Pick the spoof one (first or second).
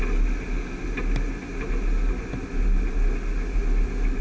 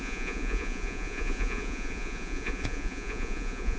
second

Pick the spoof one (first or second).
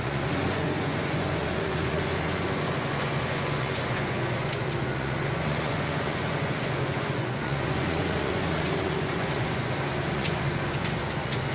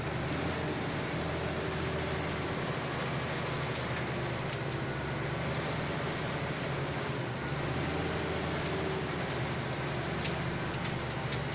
first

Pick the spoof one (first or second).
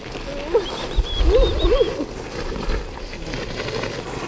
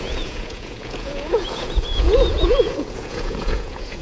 second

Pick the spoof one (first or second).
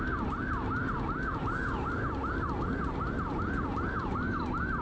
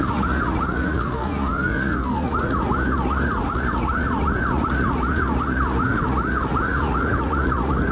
second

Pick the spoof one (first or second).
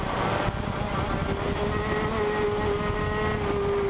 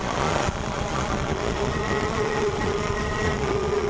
second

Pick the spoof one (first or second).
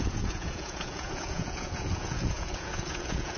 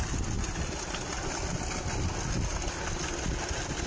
first